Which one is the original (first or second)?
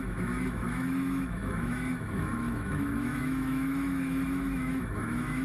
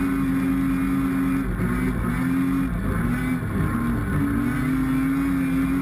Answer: second